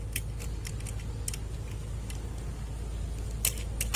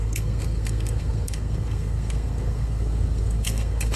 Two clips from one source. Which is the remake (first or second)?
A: second